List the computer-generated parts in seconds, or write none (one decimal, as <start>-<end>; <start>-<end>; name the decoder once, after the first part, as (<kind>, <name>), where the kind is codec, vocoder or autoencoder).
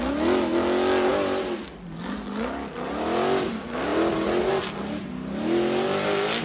none